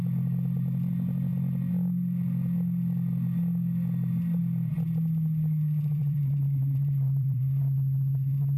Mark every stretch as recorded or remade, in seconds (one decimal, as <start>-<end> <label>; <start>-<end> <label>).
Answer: 0.0-6.0 recorded; 6.0-7.4 remade; 7.4-8.6 recorded